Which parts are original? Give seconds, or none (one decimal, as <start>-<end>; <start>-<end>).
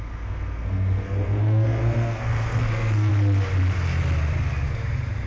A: 3.1-5.3